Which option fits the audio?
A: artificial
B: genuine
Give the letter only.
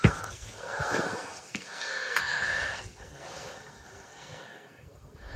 A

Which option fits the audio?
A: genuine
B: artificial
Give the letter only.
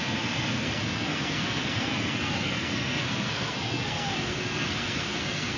B